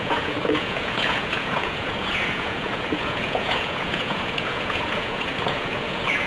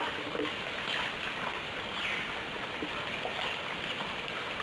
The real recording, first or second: second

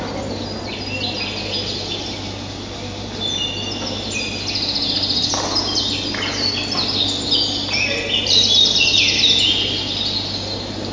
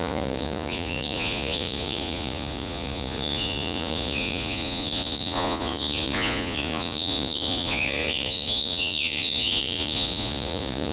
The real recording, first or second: first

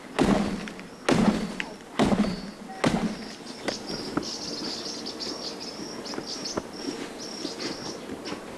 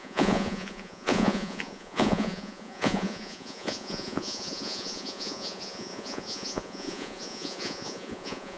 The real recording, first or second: first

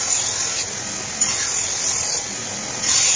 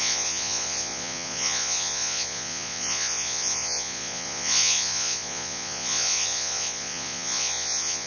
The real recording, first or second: first